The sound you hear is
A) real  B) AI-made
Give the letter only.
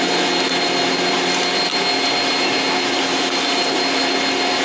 A